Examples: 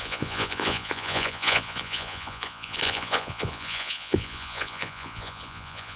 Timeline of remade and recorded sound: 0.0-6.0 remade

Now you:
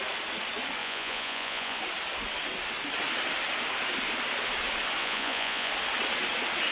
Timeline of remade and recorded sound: 0.0-0.8 recorded; 0.8-1.8 remade; 1.8-5.0 recorded; 5.0-5.7 remade; 5.7-6.7 recorded